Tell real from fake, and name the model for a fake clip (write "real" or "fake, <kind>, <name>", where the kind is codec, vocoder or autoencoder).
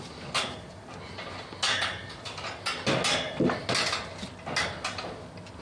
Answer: real